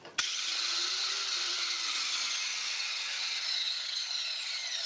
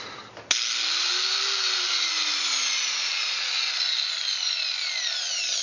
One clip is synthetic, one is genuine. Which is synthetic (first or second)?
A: first